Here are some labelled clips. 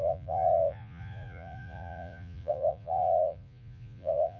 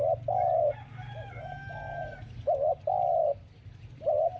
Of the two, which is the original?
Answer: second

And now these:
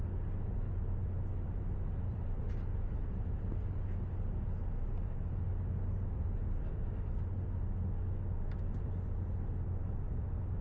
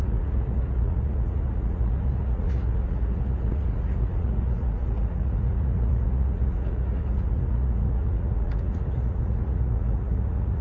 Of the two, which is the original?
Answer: first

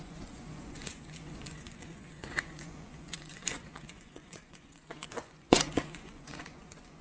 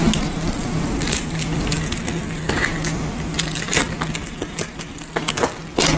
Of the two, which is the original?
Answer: second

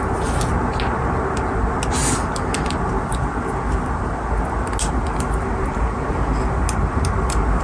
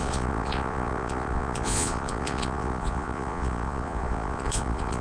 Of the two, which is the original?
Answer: first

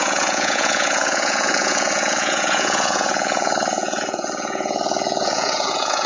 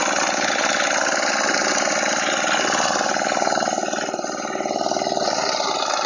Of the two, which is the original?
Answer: second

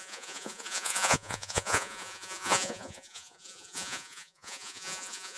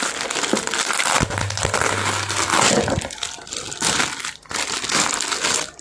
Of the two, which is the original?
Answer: second